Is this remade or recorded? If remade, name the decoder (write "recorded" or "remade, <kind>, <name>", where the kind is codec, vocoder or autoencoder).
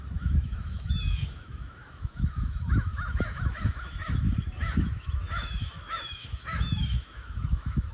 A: remade, autoencoder, DAC-VAE